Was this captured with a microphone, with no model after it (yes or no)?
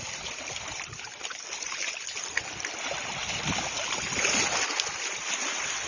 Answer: yes